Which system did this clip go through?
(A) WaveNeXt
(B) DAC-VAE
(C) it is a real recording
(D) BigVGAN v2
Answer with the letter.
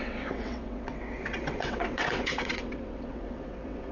A